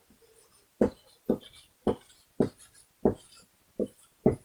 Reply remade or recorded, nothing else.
recorded